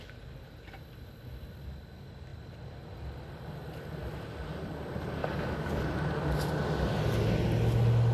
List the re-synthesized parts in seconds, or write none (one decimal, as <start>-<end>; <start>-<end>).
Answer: 5.2-5.8